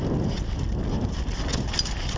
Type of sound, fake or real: real